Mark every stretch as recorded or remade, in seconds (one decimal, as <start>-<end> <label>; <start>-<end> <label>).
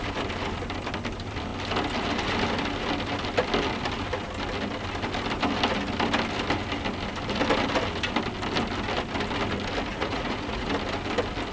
0.0-9.9 recorded; 9.9-10.7 remade; 10.7-11.5 recorded